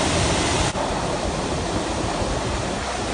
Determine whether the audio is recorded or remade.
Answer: remade